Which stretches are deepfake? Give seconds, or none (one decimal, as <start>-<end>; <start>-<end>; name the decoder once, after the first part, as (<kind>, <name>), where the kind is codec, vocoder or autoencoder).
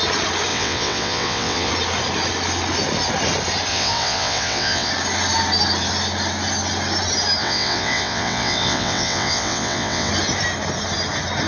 0.5-1.7 (vocoder, WaveNeXt); 3.7-4.9; 7.4-10.1